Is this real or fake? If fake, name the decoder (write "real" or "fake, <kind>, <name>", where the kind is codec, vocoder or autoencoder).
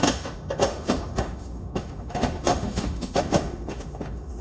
fake, autoencoder, DAC-VAE